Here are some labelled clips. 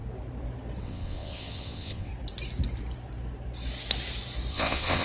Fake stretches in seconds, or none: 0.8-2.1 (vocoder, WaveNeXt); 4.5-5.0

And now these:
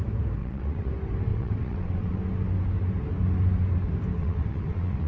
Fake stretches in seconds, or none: 0.4-0.9 (vocoder, WaveNeXt); 1.3-2.2; 4.2-5.1

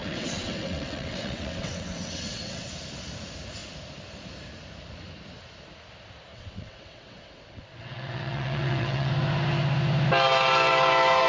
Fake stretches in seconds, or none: 0.0-2.7 (vocoder, WaveNeXt); 6.3-9.1

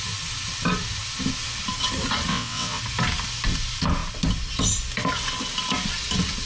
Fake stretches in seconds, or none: 2.3-2.8 (vocoder, WaveNeXt)

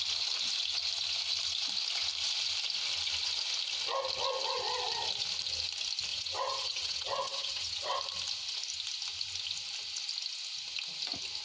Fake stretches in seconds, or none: 6.1-8.0 (vocoder, WaveNeXt)